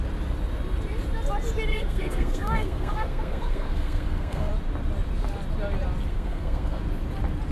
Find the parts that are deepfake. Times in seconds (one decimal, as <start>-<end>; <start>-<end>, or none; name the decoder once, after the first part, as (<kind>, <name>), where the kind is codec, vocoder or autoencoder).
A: 1.7-4.5 (codec, SNAC); 6.1-6.8